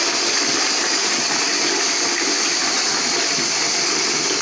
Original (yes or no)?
no